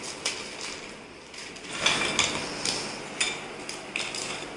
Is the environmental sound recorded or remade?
recorded